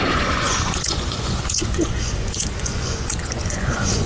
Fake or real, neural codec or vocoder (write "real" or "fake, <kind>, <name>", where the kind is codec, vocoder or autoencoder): fake, vocoder, Vocos